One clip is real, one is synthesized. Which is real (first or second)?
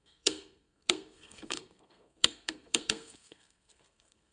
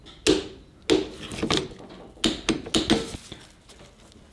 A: second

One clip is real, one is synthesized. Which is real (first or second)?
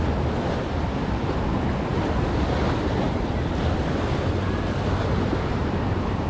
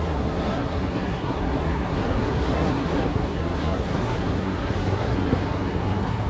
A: first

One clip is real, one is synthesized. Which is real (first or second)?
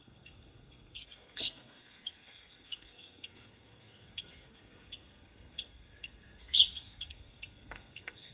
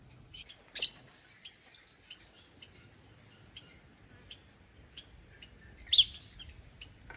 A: second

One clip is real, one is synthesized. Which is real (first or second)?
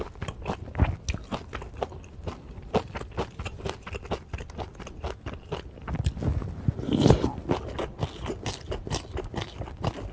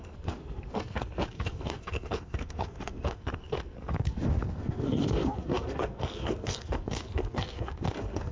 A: first